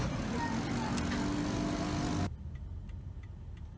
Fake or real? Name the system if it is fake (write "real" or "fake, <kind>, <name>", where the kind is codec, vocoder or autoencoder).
real